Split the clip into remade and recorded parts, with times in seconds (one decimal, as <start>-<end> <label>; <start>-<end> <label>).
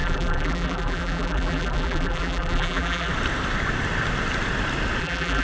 0.0-3.1 remade; 3.1-5.0 recorded; 5.0-5.4 remade